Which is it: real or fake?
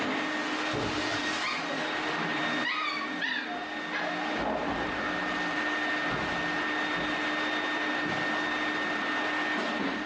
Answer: real